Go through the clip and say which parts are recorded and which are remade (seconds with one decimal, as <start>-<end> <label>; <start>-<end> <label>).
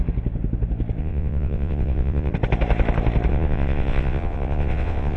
0.0-1.0 recorded; 1.0-2.3 remade; 2.3-3.3 recorded; 3.3-5.2 remade